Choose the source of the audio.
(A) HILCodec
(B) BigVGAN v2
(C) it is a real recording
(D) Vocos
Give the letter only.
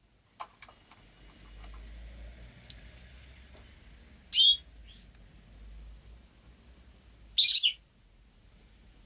C